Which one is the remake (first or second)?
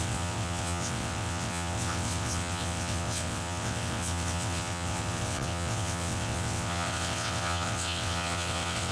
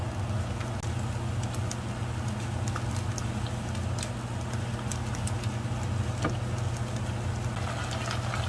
first